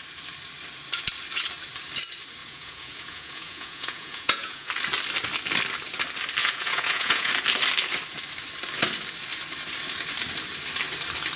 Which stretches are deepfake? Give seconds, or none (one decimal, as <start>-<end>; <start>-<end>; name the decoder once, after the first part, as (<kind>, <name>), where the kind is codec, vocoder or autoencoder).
2.4-4.7 (vocoder, Vocos); 6.4-7.3